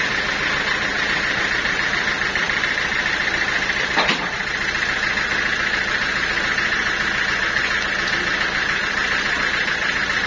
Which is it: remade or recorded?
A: recorded